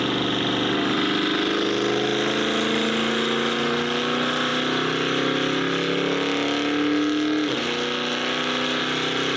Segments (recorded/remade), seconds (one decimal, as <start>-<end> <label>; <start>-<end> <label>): 0.0-9.4 recorded